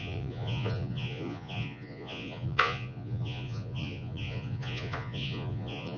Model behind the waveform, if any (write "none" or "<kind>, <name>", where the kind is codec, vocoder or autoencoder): vocoder, Vocos